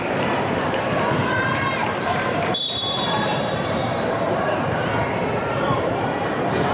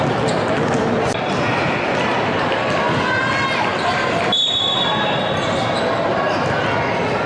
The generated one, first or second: first